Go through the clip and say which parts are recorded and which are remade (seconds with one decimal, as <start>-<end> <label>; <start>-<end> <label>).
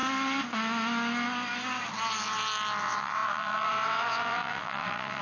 0.0-2.8 recorded; 2.8-5.2 remade